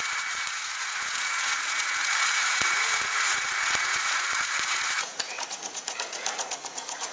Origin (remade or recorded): remade